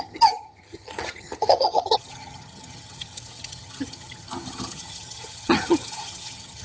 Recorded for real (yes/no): no